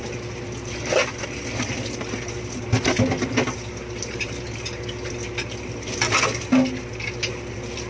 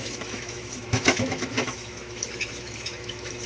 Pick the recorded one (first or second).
first